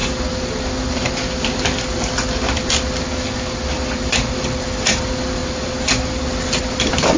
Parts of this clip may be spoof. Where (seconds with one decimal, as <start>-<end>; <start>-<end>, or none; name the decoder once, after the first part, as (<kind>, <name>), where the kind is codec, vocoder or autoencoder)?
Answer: none